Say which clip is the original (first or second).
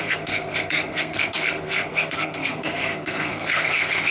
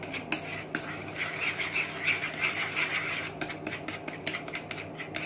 second